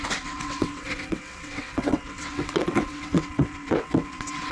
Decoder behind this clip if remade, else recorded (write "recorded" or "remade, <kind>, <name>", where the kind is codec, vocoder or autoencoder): remade, vocoder, WaveNeXt